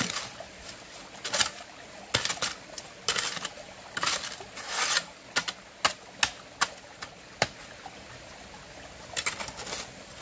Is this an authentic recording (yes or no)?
yes